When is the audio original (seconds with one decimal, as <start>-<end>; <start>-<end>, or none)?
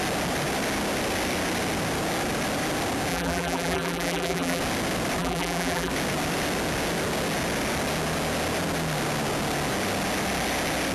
0.0-3.1; 4.6-5.2; 5.9-10.9